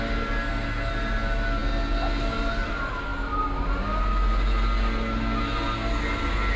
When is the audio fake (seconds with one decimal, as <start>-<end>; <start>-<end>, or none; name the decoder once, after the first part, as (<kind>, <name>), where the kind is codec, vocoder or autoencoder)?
none